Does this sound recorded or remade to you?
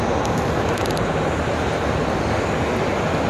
recorded